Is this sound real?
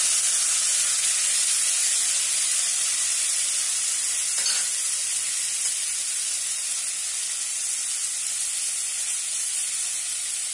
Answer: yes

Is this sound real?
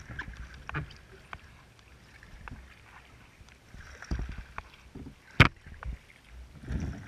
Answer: yes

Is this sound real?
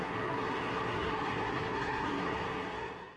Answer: no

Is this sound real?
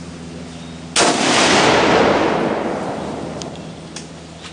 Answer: yes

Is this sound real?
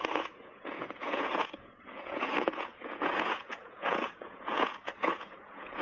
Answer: no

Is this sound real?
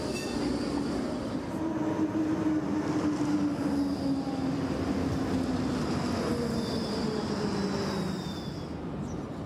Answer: yes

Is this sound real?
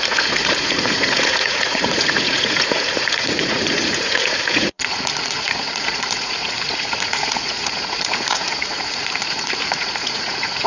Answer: no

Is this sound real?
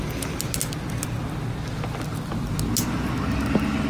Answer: yes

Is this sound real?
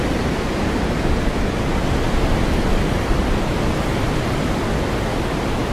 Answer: yes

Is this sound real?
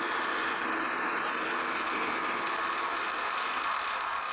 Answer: yes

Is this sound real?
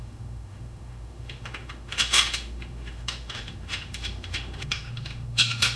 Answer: no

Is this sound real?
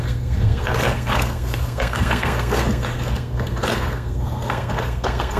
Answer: no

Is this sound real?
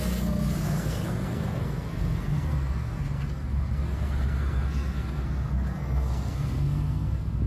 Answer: no